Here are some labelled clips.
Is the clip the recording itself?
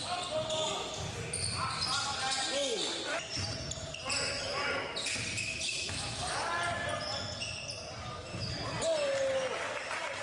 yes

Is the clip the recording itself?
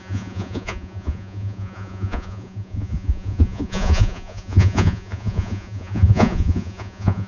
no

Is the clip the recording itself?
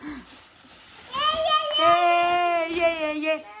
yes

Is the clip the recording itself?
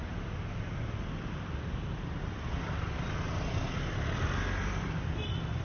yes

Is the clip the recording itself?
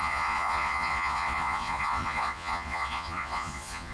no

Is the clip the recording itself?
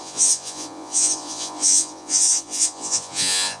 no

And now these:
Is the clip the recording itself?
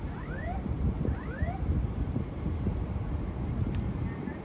yes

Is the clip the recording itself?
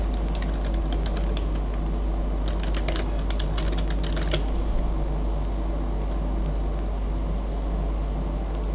yes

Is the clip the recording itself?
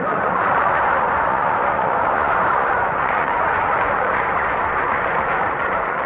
no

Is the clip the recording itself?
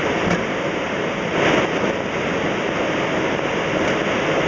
yes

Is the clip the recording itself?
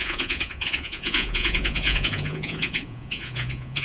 no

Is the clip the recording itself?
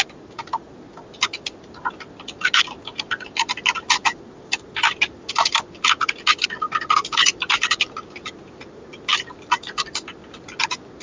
yes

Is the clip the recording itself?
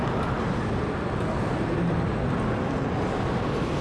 yes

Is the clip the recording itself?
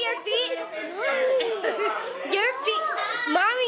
yes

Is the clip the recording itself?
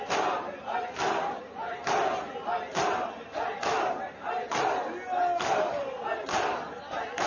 yes